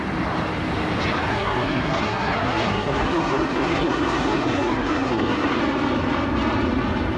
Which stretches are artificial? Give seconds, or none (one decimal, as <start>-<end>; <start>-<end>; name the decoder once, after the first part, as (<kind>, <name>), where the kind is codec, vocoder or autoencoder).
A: 1.3-5.6 (codec, SNAC)